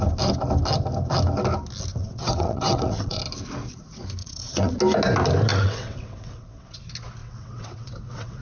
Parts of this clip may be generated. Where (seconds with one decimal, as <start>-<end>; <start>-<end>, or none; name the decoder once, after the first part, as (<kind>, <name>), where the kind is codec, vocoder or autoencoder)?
2.0-3.2 (vocoder, WaveNeXt); 4.2-4.7; 5.5-6.8; 7.2-8.4